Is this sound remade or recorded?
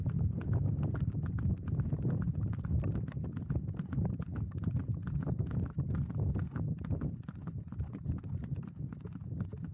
recorded